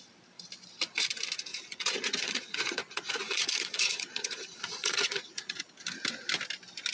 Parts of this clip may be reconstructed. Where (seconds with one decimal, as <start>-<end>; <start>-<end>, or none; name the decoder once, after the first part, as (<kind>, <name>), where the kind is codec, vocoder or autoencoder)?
1.5-5.6 (vocoder, Vocos)